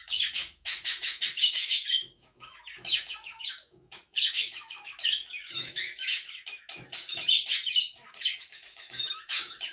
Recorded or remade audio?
remade